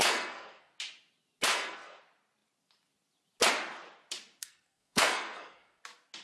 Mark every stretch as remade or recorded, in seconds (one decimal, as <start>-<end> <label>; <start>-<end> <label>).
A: 0.0-0.7 remade; 0.7-1.5 recorded; 1.5-2.0 remade; 2.0-4.4 recorded; 4.4-5.8 remade; 5.8-6.2 recorded